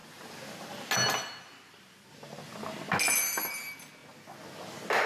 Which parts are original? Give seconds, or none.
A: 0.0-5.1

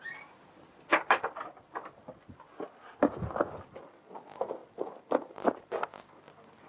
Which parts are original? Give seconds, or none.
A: 0.0-6.7

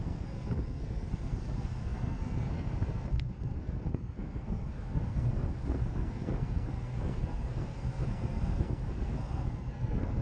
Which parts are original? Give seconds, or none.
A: none

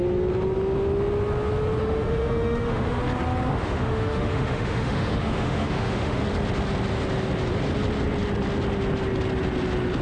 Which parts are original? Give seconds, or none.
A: 0.0-1.8; 3.0-3.5; 6.2-10.0